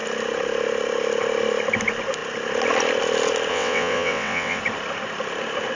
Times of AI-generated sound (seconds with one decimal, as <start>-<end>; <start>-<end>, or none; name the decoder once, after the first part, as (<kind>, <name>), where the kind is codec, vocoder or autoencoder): 3.5-4.6 (vocoder, WaveNeXt)